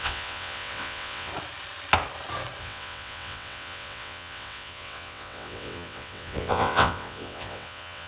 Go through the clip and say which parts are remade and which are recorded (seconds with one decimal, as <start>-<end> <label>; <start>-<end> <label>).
0.0-1.3 remade; 1.3-2.6 recorded; 2.6-8.1 remade